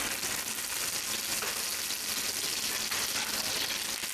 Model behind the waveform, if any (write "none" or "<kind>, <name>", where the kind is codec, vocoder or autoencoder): none